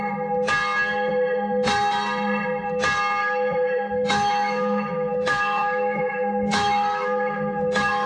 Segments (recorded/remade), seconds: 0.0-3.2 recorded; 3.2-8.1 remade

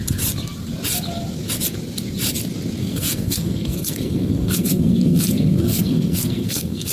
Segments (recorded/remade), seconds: 0.0-2.8 recorded; 2.8-6.9 remade